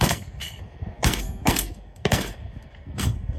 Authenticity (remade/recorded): remade